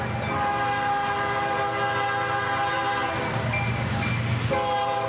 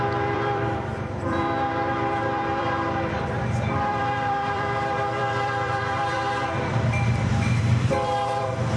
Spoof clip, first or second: second